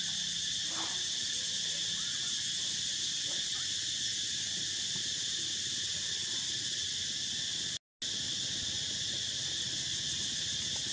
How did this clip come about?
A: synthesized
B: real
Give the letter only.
B